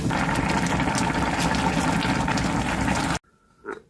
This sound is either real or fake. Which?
real